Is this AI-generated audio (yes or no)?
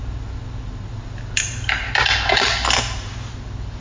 no